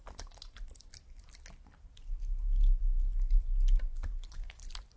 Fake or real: real